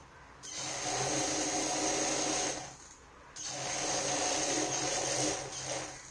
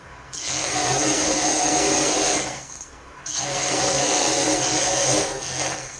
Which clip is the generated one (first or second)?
second